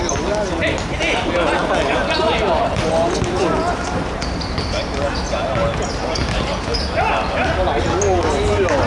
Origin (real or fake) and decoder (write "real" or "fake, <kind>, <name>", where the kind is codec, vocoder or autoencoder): real